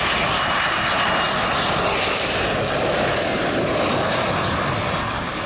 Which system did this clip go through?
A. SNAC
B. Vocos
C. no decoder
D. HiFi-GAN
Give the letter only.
C